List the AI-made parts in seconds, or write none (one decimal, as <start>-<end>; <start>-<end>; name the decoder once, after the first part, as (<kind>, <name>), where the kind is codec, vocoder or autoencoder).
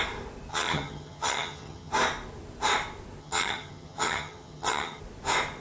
0.5-1.9 (vocoder, HiFi-GAN); 3.2-5.0